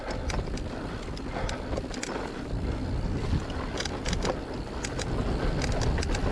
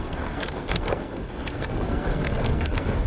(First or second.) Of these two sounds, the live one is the first